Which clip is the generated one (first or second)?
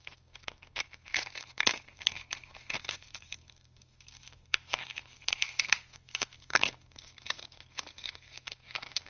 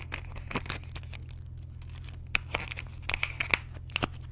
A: first